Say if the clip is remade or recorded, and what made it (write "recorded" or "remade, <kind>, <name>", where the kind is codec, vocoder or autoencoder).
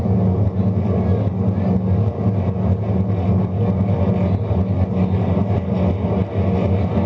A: recorded